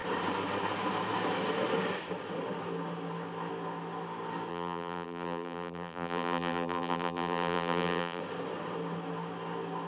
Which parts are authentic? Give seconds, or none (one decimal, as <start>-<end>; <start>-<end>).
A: 0.0-4.5; 8.2-9.9